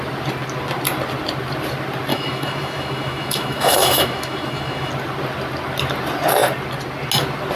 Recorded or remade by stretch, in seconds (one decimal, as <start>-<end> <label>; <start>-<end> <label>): 0.0-2.1 recorded; 2.1-4.9 remade; 4.9-7.6 recorded